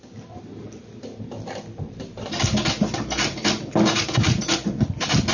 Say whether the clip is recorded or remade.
recorded